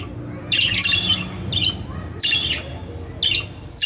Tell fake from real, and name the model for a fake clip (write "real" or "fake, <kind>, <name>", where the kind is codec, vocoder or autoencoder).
real